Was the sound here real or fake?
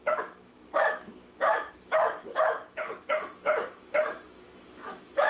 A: fake